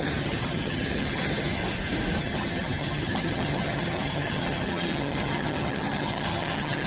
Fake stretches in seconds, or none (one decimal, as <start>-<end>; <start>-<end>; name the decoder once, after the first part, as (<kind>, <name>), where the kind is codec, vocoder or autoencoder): 0.0-1.6 (vocoder, HiFi-GAN); 2.2-6.9